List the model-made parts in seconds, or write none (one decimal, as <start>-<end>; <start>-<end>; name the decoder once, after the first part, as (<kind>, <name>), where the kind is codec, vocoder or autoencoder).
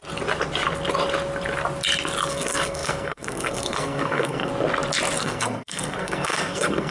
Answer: 2.3-4.5 (codec, SNAC); 5.2-6.9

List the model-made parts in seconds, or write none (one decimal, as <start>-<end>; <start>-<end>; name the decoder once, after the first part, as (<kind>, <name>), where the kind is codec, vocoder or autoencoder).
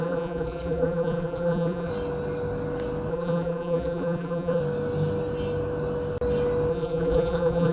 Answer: 0.0-1.9 (vocoder, BigVGAN v2); 3.1-4.6; 6.7-7.7